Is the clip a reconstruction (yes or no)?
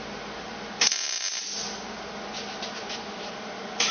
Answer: no